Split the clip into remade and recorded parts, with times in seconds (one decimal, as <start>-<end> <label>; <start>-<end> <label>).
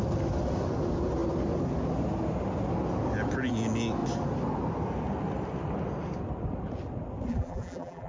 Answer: 0.0-7.3 recorded; 7.3-8.1 remade